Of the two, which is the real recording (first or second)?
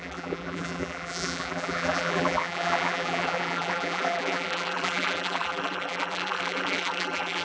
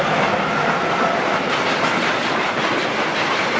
second